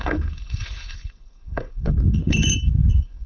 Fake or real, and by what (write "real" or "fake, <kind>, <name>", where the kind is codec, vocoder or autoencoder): fake, codec, SNAC